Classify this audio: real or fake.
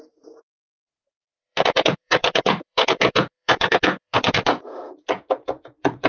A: fake